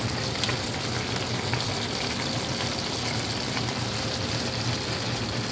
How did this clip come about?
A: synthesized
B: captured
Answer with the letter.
B